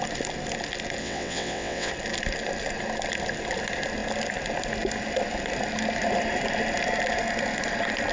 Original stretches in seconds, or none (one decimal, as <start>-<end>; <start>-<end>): 0.0-1.0; 1.9-8.1